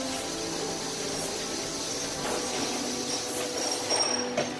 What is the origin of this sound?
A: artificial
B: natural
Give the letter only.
B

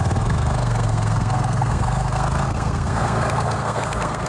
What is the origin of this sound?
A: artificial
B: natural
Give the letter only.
A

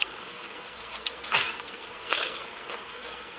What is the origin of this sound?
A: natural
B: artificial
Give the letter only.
B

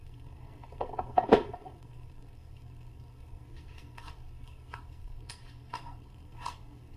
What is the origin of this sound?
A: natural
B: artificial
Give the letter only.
B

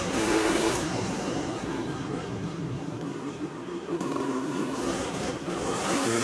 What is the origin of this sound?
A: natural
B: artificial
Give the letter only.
B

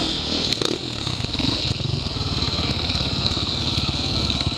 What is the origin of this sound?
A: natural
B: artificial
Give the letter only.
B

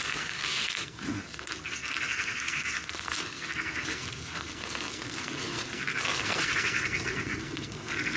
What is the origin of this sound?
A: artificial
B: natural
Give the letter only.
A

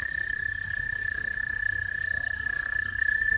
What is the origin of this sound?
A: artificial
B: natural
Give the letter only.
A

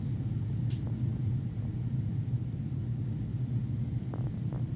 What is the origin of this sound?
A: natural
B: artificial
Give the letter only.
A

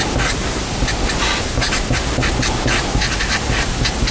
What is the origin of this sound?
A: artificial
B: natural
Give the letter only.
B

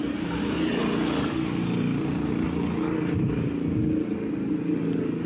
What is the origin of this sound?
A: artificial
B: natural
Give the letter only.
B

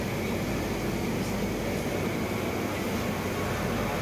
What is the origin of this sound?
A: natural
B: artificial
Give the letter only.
A